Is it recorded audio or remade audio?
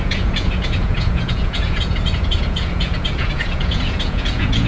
remade